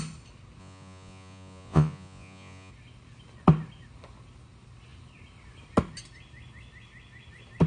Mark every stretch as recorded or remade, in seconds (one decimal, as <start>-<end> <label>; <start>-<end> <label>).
0.0-0.6 recorded; 0.6-2.7 remade; 2.7-7.7 recorded